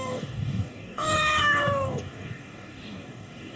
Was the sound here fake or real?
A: fake